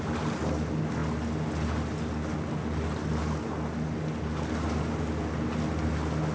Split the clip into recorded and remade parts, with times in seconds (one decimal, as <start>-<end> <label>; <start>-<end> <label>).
0.0-6.3 recorded